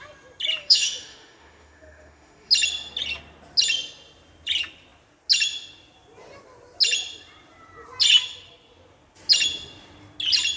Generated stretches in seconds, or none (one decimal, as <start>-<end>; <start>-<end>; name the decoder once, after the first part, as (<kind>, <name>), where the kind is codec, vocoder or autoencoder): 0.6-2.5 (autoencoder, DAC-VAE)